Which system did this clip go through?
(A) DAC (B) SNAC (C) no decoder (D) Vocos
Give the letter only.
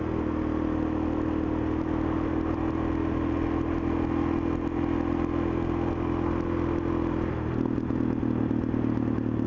C